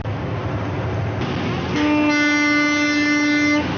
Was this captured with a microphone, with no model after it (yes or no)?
yes